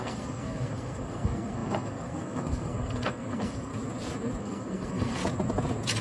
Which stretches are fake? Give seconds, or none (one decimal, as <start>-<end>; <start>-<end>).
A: 0.0-3.7; 4.4-5.2